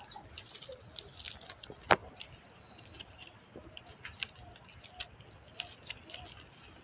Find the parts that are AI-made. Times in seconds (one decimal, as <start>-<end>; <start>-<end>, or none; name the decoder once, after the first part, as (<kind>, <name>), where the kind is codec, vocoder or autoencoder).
none